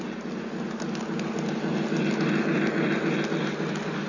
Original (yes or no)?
yes